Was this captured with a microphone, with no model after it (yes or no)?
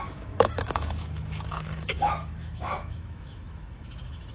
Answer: no